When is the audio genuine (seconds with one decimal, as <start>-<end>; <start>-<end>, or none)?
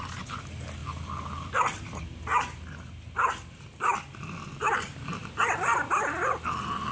0.0-6.9